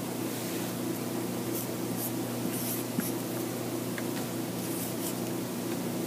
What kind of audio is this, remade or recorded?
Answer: recorded